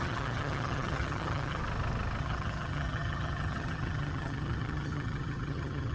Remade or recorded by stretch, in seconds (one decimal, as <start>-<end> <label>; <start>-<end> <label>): 0.0-1.6 remade; 1.6-2.2 recorded; 2.2-5.9 remade